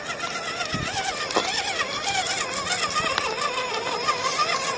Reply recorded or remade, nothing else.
recorded